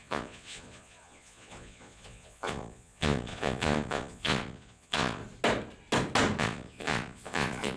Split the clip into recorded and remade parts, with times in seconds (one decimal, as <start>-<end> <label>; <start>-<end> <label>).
0.0-5.2 remade; 5.2-6.4 recorded; 6.4-7.8 remade